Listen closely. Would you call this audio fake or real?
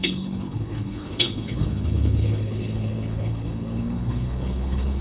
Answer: fake